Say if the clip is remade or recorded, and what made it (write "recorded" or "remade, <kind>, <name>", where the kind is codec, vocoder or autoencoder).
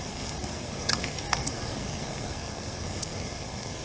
remade, codec, SNAC